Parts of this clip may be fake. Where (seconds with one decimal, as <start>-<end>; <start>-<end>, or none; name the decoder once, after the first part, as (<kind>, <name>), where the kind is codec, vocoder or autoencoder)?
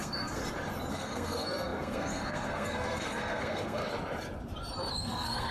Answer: 0.0-0.4 (codec, SNAC); 0.9-3.8; 4.9-5.5